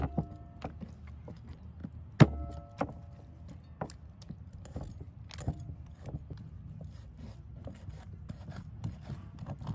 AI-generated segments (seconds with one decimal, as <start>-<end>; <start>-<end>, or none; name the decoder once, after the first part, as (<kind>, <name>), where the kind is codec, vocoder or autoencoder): none